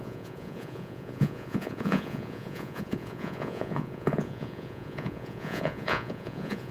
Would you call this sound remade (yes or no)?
yes